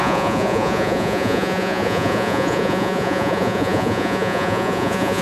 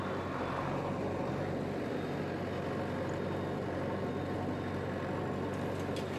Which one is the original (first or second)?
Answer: second